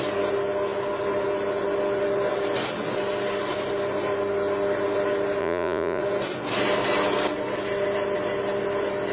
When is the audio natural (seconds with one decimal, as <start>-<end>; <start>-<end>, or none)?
0.0-5.4; 6.0-9.1